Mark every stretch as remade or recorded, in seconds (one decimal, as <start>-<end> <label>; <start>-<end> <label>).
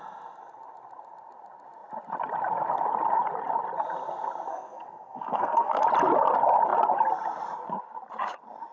0.0-4.5 recorded; 4.5-5.8 remade; 5.8-8.7 recorded